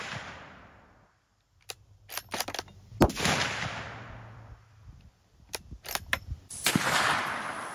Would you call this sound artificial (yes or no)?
yes